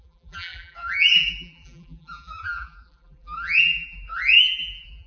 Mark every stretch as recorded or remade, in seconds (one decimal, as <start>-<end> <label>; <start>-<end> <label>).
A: 0.0-5.1 remade

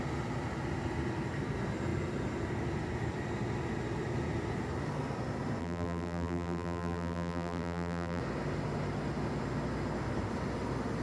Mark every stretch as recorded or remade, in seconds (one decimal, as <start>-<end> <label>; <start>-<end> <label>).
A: 0.0-5.6 recorded; 5.6-8.2 remade; 8.2-11.0 recorded

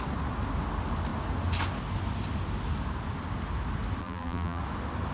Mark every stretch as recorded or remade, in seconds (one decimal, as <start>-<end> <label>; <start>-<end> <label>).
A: 0.0-4.0 recorded; 4.0-4.6 remade; 4.6-5.1 recorded

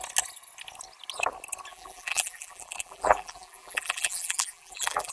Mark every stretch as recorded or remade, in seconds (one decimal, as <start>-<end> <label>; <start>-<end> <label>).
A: 0.0-1.7 recorded; 1.7-5.1 remade

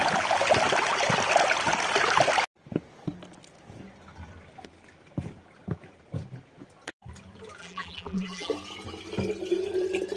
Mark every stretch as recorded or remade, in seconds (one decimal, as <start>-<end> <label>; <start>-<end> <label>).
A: 0.0-7.6 recorded; 7.6-8.5 remade; 8.5-10.2 recorded

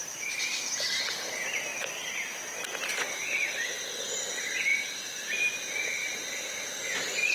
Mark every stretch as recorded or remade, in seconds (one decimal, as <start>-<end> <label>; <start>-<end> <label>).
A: 0.0-4.7 recorded; 4.7-5.4 remade; 5.4-6.0 recorded; 6.0-6.6 remade; 6.6-7.3 recorded